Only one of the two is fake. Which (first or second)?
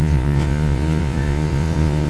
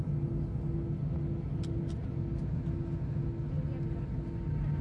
first